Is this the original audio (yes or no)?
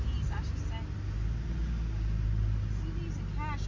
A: yes